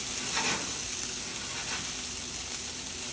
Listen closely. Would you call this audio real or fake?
real